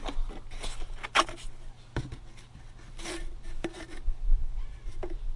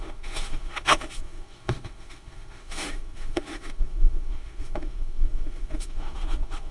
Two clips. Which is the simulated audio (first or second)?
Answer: second